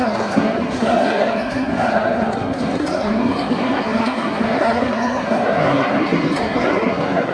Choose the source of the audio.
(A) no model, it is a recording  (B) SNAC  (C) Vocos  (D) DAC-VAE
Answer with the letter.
B